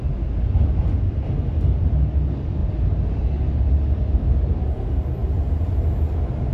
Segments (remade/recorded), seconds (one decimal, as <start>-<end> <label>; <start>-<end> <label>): 0.0-6.5 recorded